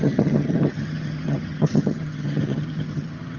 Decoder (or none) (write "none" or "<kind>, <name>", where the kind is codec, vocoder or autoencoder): vocoder, HiFi-GAN